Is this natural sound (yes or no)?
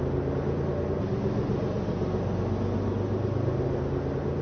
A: yes